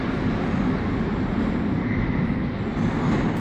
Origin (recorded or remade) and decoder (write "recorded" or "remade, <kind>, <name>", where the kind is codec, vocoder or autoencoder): recorded